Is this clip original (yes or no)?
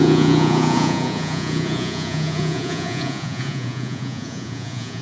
no